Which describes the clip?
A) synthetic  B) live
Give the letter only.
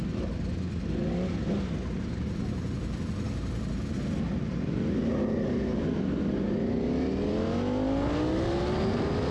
B